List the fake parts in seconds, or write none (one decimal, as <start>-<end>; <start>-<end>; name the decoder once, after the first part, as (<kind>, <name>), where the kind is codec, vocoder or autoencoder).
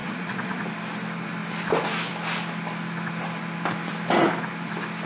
0.0-0.6 (vocoder, Vocos)